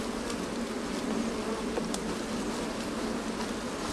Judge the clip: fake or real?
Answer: real